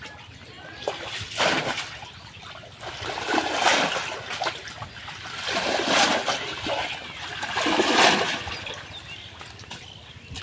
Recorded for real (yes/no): yes